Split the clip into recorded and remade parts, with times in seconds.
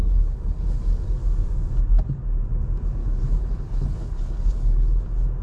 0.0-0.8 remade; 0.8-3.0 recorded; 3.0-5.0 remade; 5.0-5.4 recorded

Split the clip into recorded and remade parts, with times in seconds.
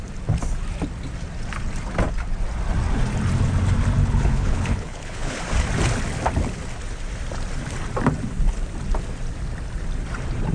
0.0-4.0 recorded; 4.0-5.4 remade; 5.4-10.5 recorded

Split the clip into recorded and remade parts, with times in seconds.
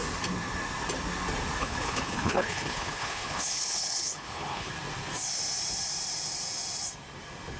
0.0-1.6 recorded; 1.6-4.7 remade; 4.7-7.6 recorded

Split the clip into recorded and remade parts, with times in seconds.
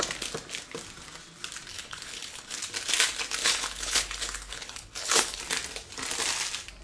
0.0-1.7 recorded; 1.7-2.6 remade; 2.6-3.4 recorded; 3.4-5.4 remade; 5.4-6.8 recorded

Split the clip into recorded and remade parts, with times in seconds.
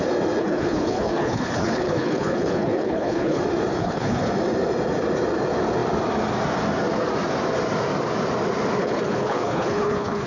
0.0-0.4 recorded; 0.4-3.4 remade; 3.4-3.8 recorded; 3.8-4.3 remade; 4.3-8.8 recorded; 8.8-10.3 remade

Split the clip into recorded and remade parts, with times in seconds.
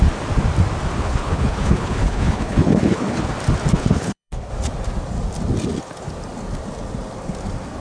0.0-1.0 recorded; 1.0-3.3 remade; 3.3-3.8 recorded; 3.8-4.5 remade; 4.5-7.8 recorded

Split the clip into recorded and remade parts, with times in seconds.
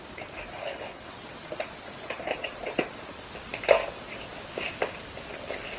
0.0-0.6 recorded; 0.6-1.1 remade; 1.1-5.8 recorded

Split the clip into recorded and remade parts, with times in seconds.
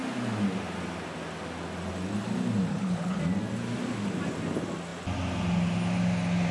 0.0-2.7 recorded; 2.7-3.2 remade; 3.2-6.5 recorded